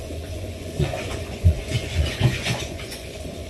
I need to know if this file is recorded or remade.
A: remade